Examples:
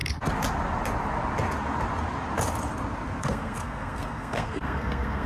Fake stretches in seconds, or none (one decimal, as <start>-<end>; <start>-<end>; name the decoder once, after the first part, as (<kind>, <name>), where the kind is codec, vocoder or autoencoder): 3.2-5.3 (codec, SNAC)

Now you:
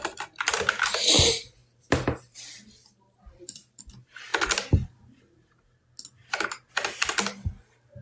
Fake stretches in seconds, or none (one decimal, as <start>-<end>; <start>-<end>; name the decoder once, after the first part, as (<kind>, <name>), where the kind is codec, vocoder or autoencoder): 1.6-3.8 (vocoder, BigVGAN v2)

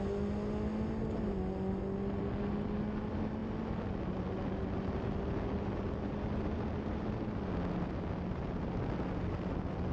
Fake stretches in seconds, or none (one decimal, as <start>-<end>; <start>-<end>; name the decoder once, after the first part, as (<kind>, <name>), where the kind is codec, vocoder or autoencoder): none

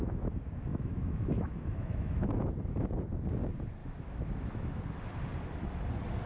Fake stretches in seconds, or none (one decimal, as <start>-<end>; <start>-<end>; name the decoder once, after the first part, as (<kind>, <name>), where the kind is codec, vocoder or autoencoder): 0.7-2.2 (autoencoder, DAC-VAE); 3.8-4.8

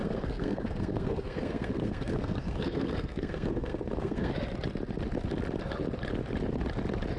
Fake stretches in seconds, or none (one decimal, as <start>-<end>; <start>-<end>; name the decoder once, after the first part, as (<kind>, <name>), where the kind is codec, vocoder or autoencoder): 0.0-4.3 (codec, SNAC)

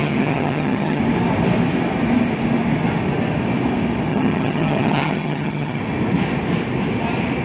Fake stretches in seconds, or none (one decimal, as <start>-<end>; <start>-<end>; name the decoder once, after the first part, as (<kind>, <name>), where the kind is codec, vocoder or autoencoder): 0.0-1.0 (vocoder, HiFi-GAN); 4.1-5.8

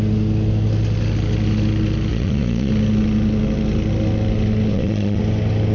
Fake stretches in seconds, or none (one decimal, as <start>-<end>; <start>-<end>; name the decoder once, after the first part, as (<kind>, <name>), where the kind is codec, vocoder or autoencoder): 2.1-2.7 (vocoder, Vocos); 4.7-5.2

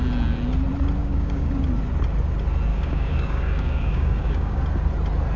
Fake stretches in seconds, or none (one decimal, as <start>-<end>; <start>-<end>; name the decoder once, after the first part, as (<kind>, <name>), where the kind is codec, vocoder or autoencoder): 1.0-1.5 (codec, DAC); 2.7-4.6